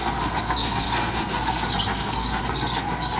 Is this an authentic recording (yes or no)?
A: no